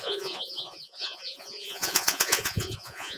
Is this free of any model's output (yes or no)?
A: no